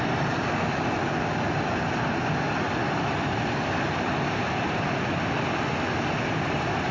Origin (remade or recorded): recorded